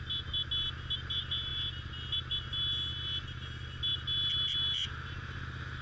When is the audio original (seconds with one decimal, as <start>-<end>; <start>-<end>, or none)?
0.0-5.8